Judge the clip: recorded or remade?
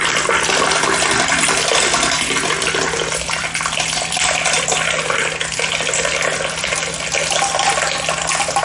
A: recorded